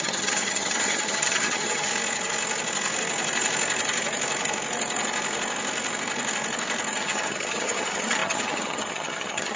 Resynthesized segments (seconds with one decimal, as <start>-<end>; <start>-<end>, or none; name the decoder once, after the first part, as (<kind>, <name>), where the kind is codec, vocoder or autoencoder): 0.0-1.9 (vocoder, HiFi-GAN); 7.0-9.6